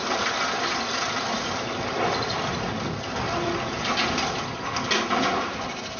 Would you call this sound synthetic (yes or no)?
no